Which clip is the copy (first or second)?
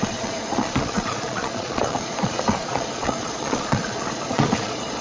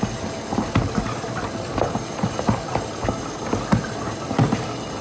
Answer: first